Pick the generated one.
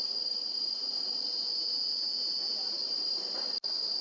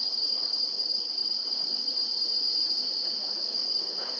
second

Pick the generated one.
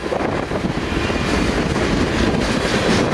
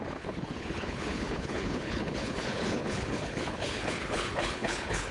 second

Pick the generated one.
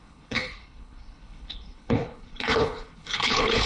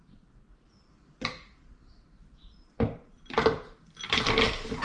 first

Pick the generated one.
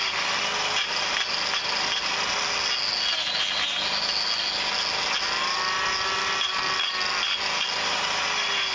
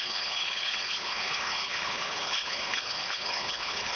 second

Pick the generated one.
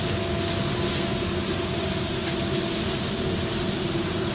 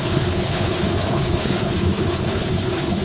second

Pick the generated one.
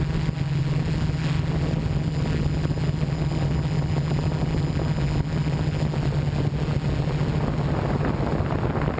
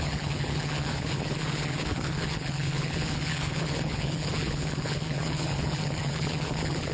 second